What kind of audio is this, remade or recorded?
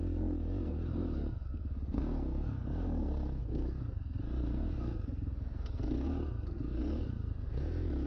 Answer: remade